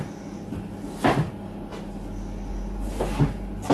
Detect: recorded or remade recorded